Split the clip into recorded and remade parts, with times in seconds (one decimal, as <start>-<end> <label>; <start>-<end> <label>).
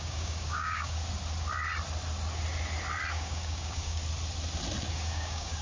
0.0-1.0 remade; 1.0-3.1 recorded; 3.1-4.0 remade; 4.0-4.9 recorded; 4.9-5.6 remade